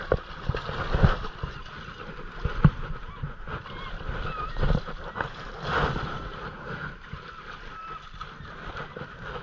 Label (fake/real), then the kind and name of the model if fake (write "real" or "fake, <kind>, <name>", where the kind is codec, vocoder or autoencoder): real